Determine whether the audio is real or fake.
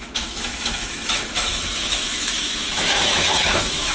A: fake